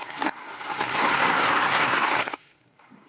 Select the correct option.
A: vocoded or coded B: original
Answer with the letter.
A